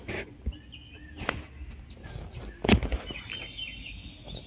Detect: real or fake real